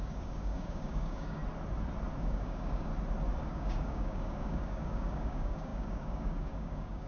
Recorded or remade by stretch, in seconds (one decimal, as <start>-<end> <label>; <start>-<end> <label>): 0.0-1.4 remade; 1.4-2.2 recorded; 2.2-2.9 remade; 2.9-3.4 recorded; 3.4-7.1 remade